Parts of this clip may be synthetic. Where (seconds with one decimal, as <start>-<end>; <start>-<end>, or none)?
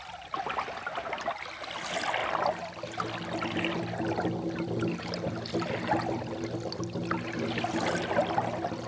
none